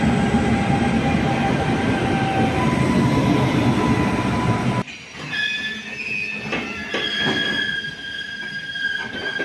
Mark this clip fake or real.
real